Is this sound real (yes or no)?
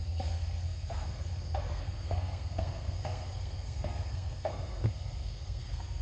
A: no